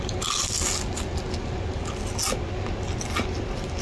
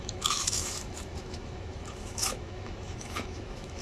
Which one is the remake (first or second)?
second